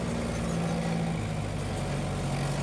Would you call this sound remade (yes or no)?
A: no